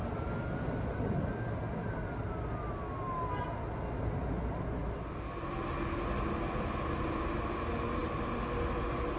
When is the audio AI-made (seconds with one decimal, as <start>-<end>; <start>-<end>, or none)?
none